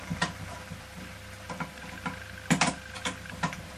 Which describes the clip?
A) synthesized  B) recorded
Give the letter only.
B